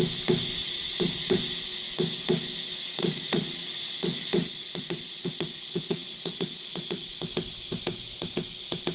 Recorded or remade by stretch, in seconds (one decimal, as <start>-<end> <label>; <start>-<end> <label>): 0.0-0.6 recorded; 0.6-1.4 remade; 1.4-3.0 recorded; 3.0-7.2 remade; 7.2-8.9 recorded